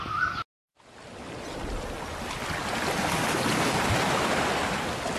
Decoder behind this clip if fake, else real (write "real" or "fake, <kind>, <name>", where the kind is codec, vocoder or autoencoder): real